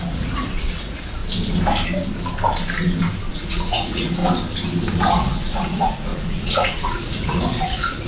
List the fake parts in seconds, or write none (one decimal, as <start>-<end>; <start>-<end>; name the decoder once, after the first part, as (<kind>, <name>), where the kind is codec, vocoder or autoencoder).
0.0-1.2 (vocoder, Vocos); 3.3-4.2; 5.1-8.1